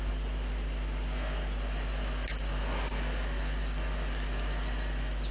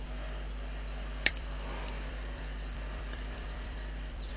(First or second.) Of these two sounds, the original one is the first